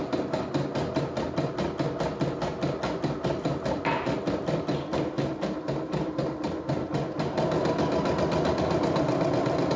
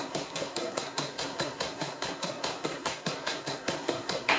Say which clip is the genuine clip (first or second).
first